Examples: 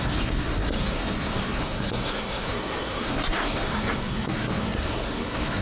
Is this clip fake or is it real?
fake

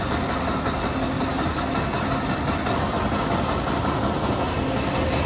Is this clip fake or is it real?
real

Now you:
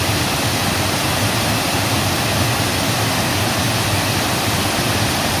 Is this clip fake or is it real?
real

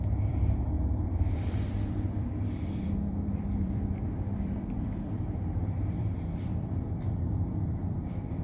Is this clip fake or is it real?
fake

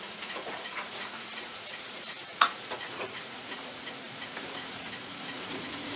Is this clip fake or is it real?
fake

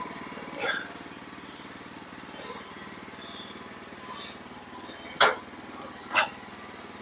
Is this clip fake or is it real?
real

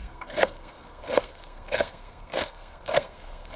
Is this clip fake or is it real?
fake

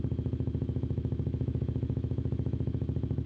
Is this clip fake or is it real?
fake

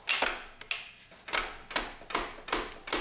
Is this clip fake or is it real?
real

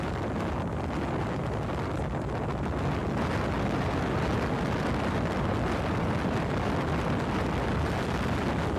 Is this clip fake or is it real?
real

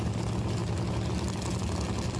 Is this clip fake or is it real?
real